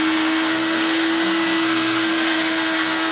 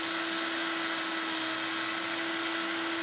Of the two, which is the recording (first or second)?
second